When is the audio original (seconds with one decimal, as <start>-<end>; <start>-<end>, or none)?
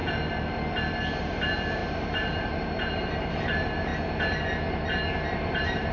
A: 0.0-1.2; 3.9-5.3